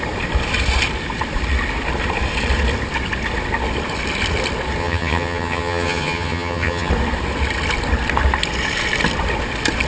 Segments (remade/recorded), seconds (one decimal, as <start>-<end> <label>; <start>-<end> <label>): 0.0-4.8 recorded; 4.8-6.9 remade; 6.9-9.9 recorded